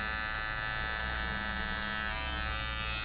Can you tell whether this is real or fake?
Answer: real